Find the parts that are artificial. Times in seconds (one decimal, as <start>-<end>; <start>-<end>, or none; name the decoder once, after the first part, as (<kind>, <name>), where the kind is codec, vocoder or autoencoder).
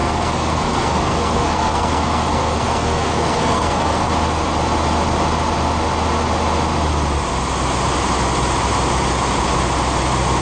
0.0-4.1 (codec, SNAC)